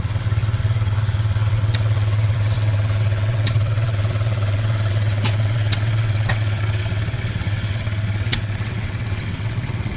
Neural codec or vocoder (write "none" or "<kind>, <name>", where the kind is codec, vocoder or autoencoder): vocoder, WaveNeXt